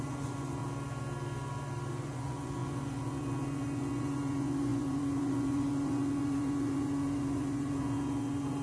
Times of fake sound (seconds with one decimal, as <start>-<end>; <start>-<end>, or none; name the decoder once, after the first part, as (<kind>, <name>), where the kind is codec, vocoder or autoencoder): 0.0-0.6 (vocoder, Vocos); 1.9-8.6